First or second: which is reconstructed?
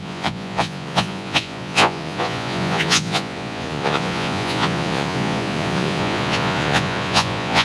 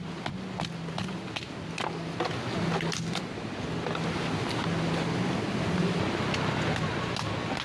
first